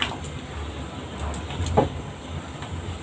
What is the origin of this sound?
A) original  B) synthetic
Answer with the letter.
A